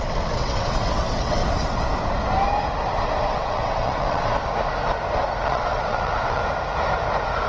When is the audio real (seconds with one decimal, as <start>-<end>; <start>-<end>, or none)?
1.4-3.3; 4.3-5.4; 6.4-7.5